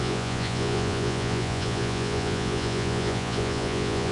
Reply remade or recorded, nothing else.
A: remade